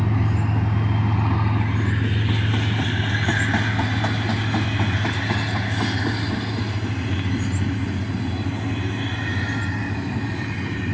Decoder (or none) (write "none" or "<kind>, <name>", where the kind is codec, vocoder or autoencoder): none